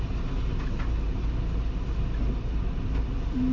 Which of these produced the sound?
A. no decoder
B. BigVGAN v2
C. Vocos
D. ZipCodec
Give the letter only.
A